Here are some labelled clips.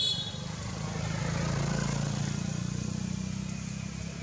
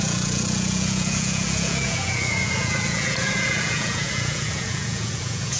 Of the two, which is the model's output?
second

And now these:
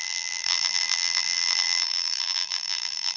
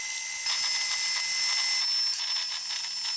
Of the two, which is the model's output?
first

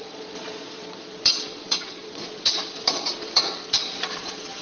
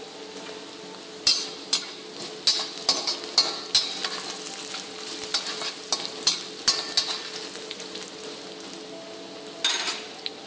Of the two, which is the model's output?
first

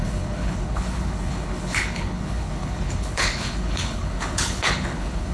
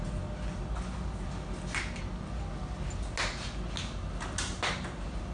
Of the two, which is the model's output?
first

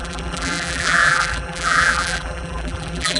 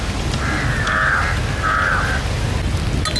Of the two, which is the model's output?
first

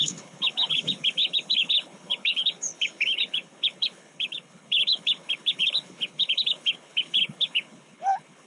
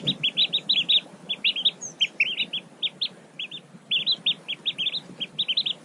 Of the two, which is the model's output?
first